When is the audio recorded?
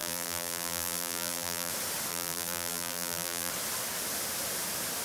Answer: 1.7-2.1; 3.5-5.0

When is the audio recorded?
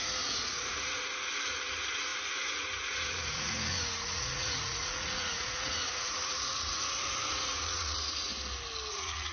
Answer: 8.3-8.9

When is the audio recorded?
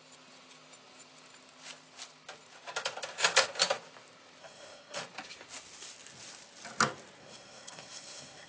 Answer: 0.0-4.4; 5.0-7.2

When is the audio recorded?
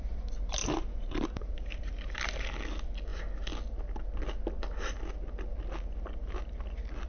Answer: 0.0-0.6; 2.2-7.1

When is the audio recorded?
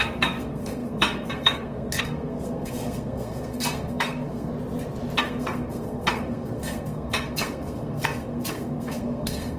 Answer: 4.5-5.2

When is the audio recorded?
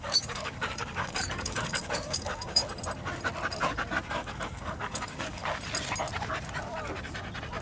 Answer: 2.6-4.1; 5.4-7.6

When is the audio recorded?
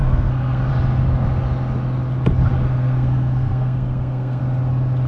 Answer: 0.7-2.5; 4.4-5.1